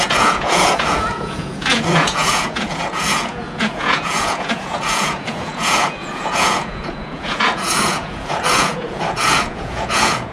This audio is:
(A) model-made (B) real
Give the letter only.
A